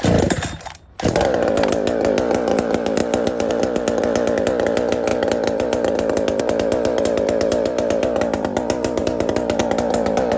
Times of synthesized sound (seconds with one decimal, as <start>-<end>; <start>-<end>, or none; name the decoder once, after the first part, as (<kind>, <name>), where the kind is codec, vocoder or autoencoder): 3.0-3.5 (vocoder, BigVGAN v2); 5.1-6.4; 9.0-9.6